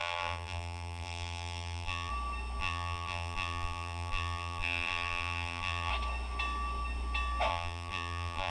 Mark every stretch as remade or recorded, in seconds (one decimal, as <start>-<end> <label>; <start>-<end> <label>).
0.0-2.1 remade; 2.1-2.6 recorded; 2.6-5.9 remade; 5.9-7.5 recorded; 7.5-8.5 remade